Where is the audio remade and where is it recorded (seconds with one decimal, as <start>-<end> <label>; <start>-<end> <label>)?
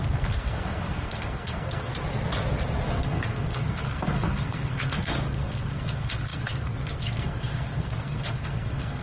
0.0-1.9 remade; 1.9-2.9 recorded; 2.9-9.0 remade